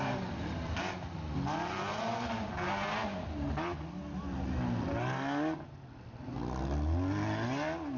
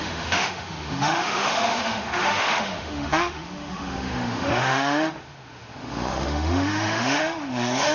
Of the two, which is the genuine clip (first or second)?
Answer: first